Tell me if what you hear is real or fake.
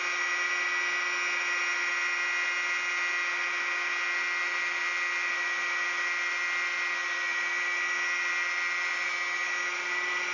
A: real